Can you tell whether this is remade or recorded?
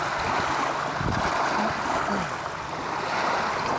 recorded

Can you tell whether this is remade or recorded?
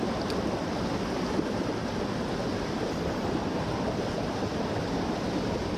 recorded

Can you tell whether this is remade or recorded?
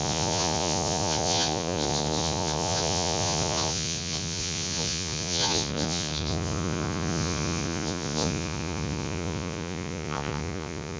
remade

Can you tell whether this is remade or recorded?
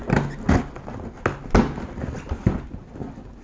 recorded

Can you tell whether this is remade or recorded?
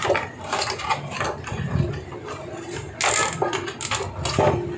recorded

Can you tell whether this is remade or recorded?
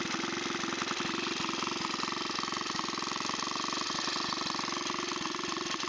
recorded